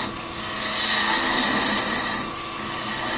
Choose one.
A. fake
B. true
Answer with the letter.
B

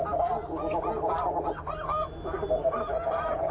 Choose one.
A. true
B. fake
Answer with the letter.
A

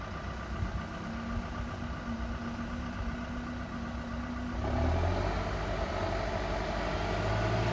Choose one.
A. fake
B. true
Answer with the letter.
B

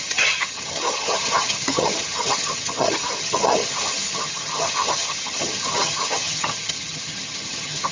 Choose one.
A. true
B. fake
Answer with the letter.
B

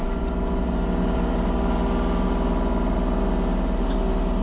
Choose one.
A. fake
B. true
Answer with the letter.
B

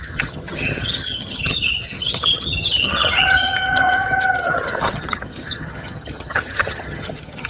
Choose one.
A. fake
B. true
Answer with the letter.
A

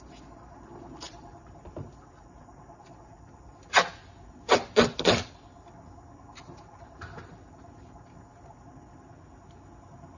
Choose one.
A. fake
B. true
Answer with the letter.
B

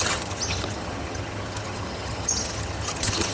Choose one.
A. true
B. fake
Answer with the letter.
B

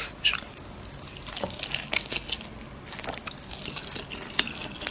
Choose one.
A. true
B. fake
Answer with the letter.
A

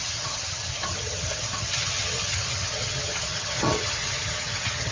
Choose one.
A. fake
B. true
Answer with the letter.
A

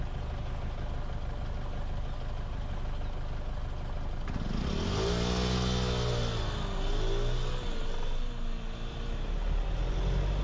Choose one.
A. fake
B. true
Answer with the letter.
B